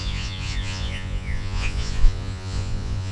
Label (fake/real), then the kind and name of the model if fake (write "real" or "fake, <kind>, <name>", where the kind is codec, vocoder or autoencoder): fake, vocoder, Vocos